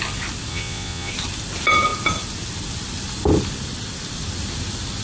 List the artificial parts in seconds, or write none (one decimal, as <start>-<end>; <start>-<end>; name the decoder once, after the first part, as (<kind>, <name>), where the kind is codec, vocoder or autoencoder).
0.5-1.1 (vocoder, Vocos)